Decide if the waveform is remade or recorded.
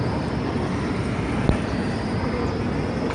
recorded